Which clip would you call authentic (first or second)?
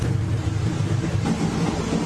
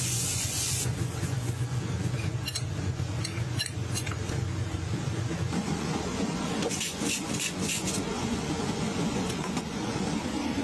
first